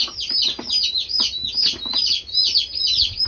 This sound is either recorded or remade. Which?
recorded